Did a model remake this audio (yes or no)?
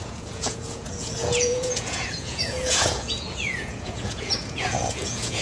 yes